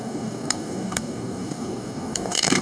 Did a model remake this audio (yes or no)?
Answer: yes